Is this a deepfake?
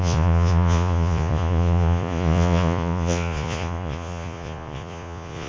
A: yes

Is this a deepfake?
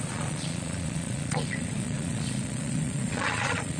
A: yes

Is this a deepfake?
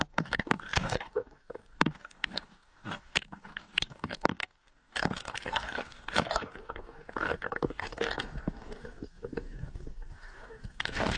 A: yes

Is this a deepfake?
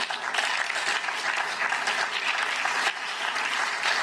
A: no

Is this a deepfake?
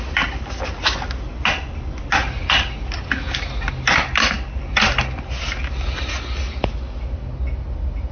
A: no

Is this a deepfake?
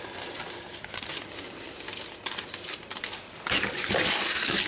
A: no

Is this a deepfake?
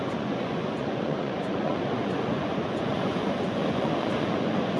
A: yes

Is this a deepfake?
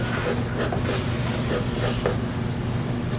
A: no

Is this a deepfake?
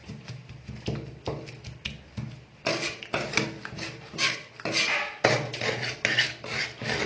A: no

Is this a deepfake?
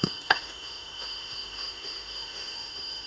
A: yes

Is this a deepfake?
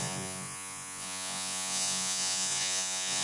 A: yes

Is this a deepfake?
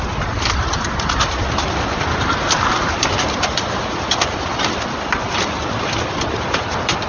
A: no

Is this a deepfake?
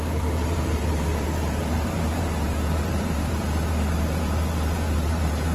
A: yes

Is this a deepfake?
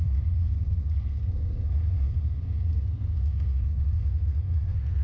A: yes